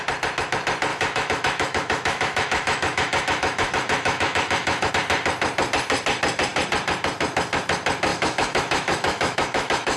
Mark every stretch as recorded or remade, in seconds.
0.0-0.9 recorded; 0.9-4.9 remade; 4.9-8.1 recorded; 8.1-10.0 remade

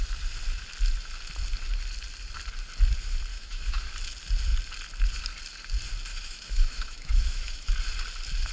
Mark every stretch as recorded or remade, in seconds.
0.0-3.3 recorded; 3.3-3.9 remade; 3.9-6.1 recorded; 6.1-7.7 remade; 7.7-8.5 recorded

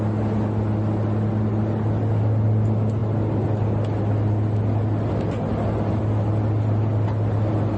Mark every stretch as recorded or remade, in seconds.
0.0-7.8 recorded

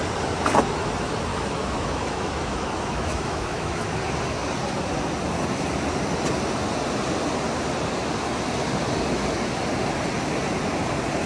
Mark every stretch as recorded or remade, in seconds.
0.0-1.3 recorded; 1.3-4.0 remade; 4.0-11.3 recorded